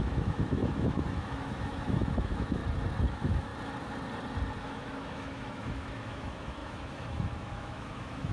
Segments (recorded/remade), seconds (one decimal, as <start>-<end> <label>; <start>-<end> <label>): 0.0-2.6 remade; 2.6-3.1 recorded; 3.1-3.5 remade; 3.5-4.6 recorded; 4.6-8.3 remade